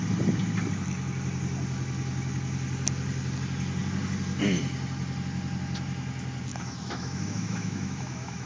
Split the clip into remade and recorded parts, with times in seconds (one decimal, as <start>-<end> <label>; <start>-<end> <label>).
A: 0.0-6.5 recorded; 6.5-8.5 remade